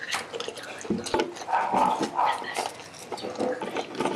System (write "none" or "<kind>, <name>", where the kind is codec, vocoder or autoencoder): none